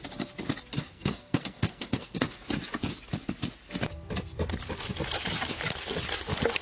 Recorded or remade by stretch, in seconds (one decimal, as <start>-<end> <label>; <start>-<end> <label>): 0.0-0.9 recorded; 0.9-2.2 remade; 2.2-6.6 recorded